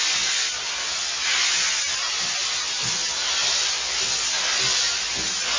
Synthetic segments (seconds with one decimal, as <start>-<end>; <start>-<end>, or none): none